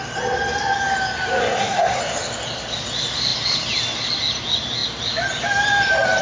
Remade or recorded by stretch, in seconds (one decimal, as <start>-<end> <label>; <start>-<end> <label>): 0.0-1.4 recorded; 1.4-2.0 remade; 2.0-6.2 recorded